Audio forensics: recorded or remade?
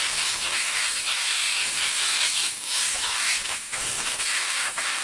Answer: remade